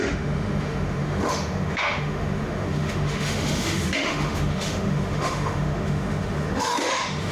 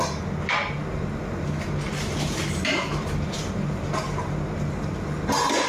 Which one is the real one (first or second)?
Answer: second